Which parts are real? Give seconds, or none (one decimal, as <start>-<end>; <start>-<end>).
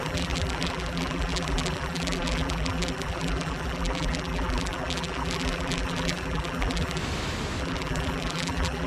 7.0-7.6